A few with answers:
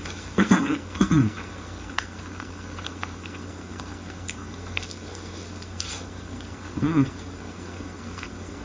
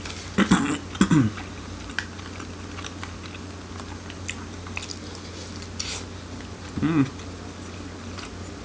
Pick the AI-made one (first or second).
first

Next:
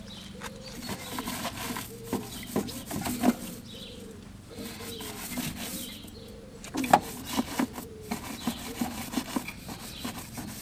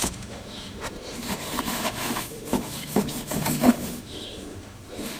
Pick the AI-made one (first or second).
second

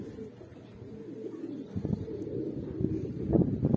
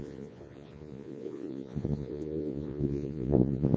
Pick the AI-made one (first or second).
second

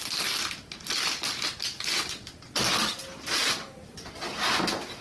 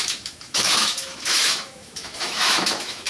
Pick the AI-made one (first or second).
second